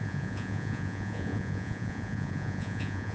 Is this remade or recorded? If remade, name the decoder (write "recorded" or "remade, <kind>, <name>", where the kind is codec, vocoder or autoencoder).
remade, vocoder, Vocos